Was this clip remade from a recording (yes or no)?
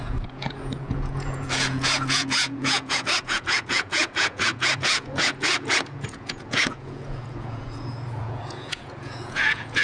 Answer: yes